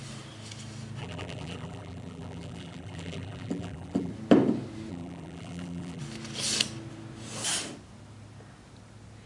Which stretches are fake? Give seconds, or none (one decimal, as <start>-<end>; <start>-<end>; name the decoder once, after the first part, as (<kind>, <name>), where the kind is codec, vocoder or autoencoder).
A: 1.0-4.1 (vocoder, BigVGAN v2); 4.9-6.0